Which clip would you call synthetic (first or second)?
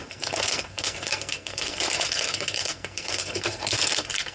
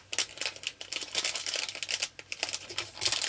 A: first